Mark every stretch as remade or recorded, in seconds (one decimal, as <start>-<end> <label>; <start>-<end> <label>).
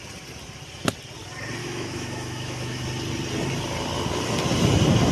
0.0-1.6 recorded; 1.6-2.8 remade; 2.8-5.1 recorded